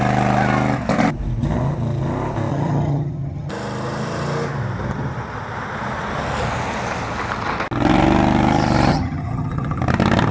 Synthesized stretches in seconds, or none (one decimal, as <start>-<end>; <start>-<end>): 2.5-3.5; 8.9-9.8